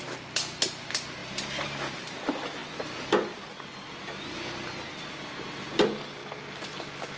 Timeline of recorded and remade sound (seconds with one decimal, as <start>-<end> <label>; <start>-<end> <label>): 0.0-7.2 recorded